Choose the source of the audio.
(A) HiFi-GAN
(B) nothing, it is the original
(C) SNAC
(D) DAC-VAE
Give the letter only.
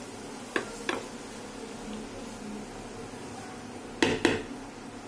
B